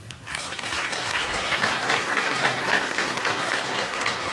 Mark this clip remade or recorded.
remade